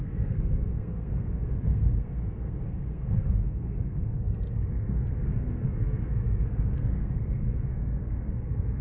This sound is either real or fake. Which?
fake